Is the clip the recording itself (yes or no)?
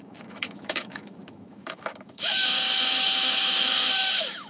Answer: no